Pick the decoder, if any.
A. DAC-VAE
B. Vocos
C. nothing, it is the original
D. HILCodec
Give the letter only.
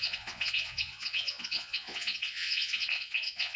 B